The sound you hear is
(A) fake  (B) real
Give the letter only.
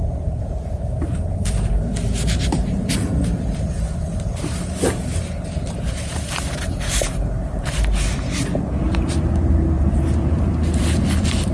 A